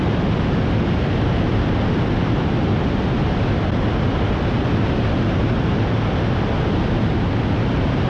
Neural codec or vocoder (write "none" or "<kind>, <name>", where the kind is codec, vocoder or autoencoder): none